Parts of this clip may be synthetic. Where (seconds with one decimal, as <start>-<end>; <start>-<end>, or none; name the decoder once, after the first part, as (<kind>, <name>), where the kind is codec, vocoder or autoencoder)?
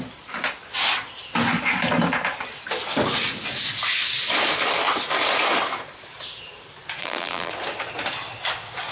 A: 7.0-7.5 (vocoder, BigVGAN v2)